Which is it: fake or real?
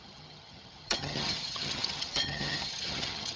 fake